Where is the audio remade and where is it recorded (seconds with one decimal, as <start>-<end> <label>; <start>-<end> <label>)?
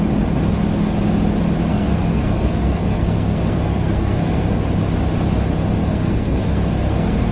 0.0-1.7 recorded; 1.7-4.6 remade; 4.6-5.8 recorded; 5.8-7.3 remade